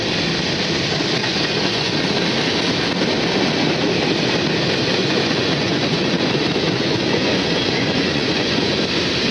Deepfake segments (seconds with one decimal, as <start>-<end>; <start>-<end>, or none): 1.2-1.9; 5.0-8.7

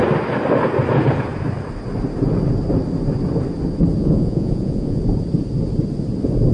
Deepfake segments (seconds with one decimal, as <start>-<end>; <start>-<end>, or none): 4.0-5.0